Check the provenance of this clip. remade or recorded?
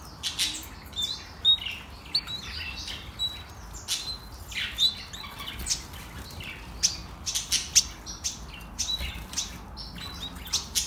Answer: recorded